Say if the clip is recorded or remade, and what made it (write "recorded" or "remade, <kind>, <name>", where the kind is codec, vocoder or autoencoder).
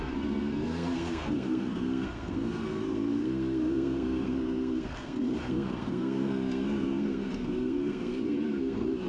remade, codec, SNAC